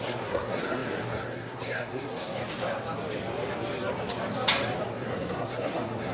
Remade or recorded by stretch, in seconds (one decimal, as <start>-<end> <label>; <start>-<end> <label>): 0.0-2.4 remade; 2.4-4.9 recorded; 4.9-6.1 remade